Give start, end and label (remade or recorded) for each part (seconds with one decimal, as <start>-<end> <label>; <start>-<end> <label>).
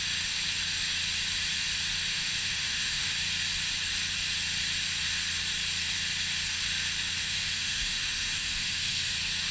0.0-2.1 recorded; 2.1-3.1 remade; 3.1-7.2 recorded; 7.2-9.1 remade; 9.1-9.5 recorded